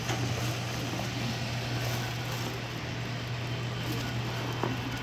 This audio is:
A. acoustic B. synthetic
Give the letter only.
A